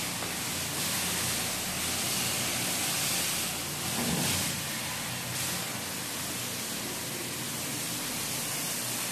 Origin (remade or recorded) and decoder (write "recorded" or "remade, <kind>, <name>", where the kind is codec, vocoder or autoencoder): recorded